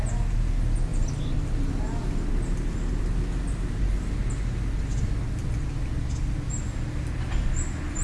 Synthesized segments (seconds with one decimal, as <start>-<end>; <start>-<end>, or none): none